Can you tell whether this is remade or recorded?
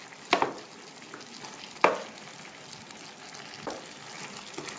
recorded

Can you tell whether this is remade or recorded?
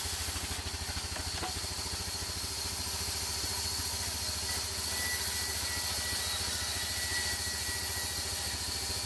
recorded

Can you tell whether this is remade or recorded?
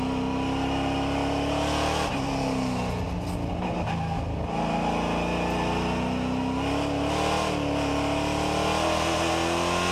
recorded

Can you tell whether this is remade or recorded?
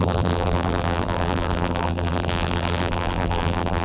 remade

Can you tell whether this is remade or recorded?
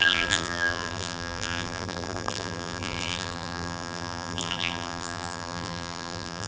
remade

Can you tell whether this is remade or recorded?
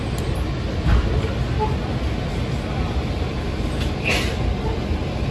recorded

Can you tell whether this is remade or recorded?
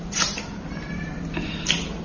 remade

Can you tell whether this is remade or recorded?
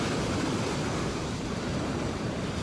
remade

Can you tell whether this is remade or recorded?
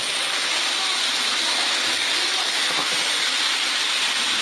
recorded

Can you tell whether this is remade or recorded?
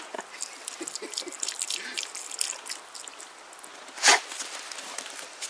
recorded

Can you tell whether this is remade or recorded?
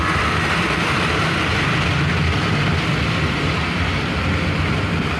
remade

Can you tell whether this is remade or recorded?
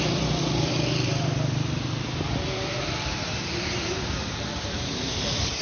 remade